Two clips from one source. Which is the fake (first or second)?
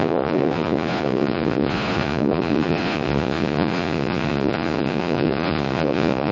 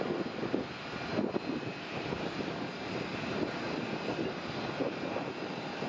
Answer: first